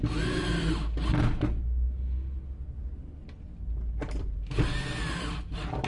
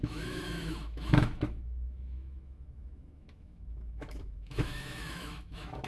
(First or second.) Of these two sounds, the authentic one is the first